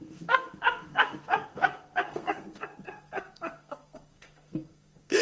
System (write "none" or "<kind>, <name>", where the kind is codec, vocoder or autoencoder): codec, SNAC